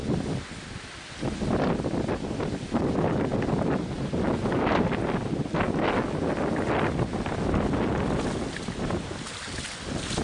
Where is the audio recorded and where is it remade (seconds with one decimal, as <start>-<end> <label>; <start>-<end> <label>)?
0.0-10.2 recorded